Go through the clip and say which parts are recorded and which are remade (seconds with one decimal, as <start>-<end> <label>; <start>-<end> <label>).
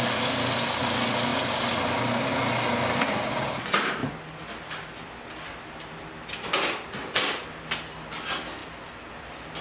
0.0-9.6 recorded